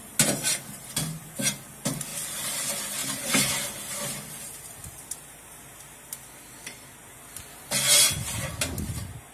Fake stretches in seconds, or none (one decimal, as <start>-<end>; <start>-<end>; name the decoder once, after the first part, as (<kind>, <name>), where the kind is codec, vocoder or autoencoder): none